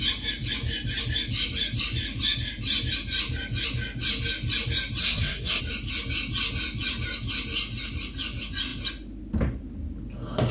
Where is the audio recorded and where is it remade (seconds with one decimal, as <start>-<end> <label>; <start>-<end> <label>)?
0.0-5.0 recorded; 5.0-5.6 remade; 5.6-10.5 recorded